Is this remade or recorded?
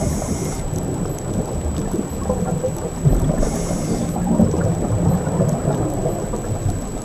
recorded